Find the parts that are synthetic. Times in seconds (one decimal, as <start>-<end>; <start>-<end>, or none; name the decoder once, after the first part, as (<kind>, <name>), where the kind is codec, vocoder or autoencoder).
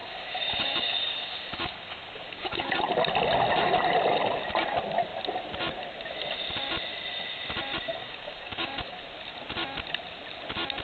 0.0-2.8 (codec, DAC); 8.0-9.0